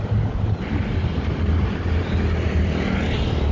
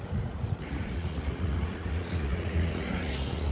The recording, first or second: first